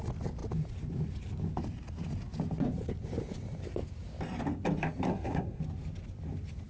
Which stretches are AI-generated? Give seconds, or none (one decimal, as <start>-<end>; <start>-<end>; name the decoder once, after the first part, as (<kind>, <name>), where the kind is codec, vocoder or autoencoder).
5.1-5.6 (codec, SNAC)